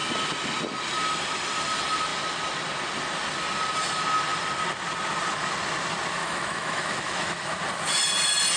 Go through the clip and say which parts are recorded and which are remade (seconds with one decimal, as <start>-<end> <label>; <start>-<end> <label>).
0.0-6.2 recorded; 6.2-7.6 remade; 7.6-8.6 recorded